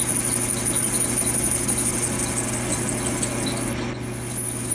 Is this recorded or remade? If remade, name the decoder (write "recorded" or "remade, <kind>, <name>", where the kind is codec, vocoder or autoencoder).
recorded